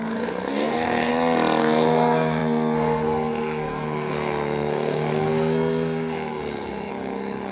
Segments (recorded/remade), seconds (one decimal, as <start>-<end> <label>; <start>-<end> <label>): 0.0-1.1 remade; 1.1-1.6 recorded; 1.6-7.5 remade